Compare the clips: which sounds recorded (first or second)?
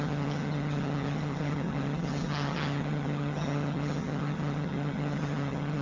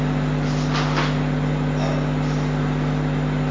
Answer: second